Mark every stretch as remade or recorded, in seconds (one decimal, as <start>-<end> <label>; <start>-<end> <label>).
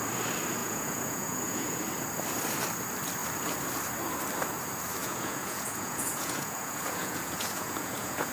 0.0-0.6 recorded; 0.6-1.8 remade; 1.8-5.0 recorded; 5.0-8.3 remade